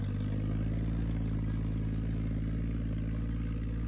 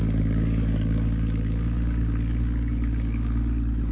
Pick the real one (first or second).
first